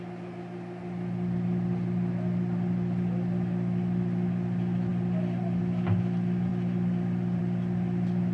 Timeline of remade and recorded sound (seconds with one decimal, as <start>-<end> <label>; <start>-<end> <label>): 0.0-4.9 recorded; 4.9-5.6 remade; 5.6-6.5 recorded; 6.5-7.4 remade; 7.4-8.3 recorded